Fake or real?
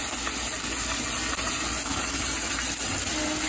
real